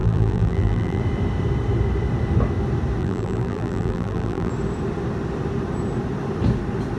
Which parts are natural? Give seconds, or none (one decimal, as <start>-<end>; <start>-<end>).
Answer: 1.0-3.0; 4.5-7.0